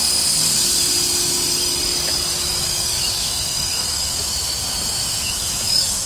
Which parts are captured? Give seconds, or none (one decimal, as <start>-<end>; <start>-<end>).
0.0-2.3